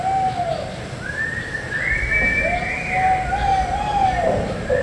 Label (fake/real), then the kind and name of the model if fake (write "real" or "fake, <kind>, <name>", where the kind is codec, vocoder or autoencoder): real